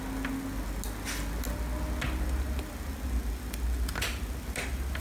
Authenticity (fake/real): real